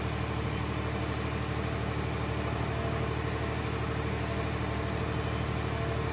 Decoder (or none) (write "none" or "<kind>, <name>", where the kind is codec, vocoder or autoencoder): none